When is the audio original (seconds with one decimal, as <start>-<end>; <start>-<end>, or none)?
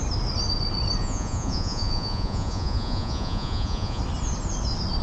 0.0-1.0; 4.0-5.0